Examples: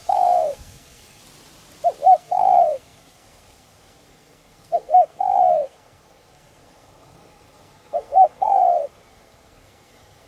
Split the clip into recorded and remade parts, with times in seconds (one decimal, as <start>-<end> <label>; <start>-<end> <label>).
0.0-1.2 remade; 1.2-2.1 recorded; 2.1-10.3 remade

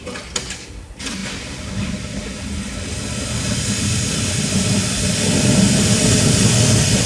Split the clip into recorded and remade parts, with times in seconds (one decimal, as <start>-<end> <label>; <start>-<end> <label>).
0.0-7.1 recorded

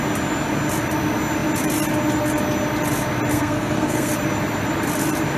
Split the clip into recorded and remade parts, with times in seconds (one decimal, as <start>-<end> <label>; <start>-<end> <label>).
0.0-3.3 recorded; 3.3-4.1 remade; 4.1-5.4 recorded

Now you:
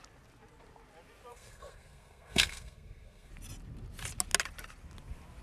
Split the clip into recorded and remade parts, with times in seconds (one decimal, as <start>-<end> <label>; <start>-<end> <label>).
0.0-1.3 recorded; 1.3-3.3 remade; 3.3-5.4 recorded

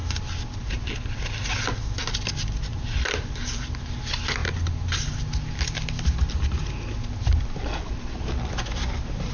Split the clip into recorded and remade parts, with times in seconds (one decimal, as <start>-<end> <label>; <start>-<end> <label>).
0.0-9.3 recorded

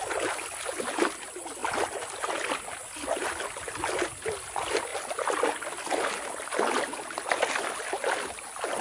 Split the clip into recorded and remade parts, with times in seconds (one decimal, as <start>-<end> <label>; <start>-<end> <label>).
0.0-8.8 recorded

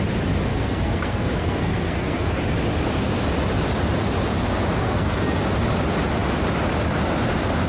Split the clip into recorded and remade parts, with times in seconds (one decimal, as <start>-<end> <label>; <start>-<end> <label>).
0.0-0.5 recorded; 0.5-2.3 remade; 2.3-4.8 recorded; 4.8-5.4 remade; 5.4-7.7 recorded

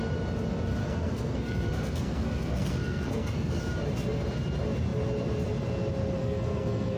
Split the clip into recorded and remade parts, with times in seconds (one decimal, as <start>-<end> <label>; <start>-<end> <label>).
0.0-0.8 recorded; 0.8-3.6 remade; 3.6-6.2 recorded; 6.2-7.0 remade